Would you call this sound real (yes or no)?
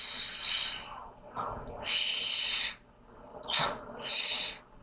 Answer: yes